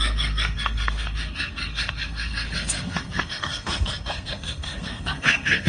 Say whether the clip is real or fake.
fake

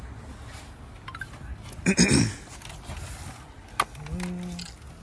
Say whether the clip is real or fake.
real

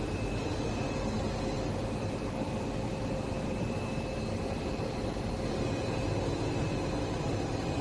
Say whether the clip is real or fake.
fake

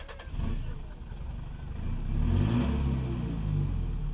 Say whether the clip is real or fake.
real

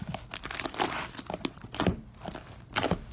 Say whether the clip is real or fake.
real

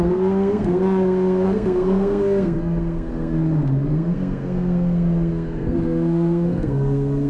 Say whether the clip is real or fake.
fake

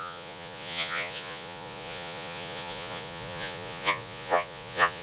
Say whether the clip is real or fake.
fake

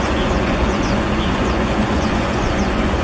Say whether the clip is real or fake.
fake